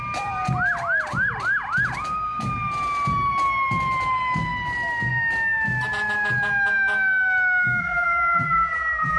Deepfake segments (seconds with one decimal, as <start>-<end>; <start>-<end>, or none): 7.8-9.2